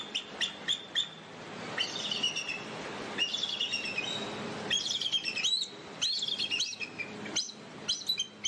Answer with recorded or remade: recorded